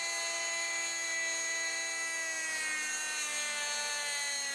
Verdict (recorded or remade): recorded